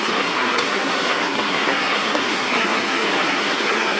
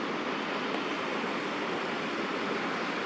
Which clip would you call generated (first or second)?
first